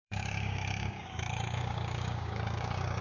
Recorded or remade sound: remade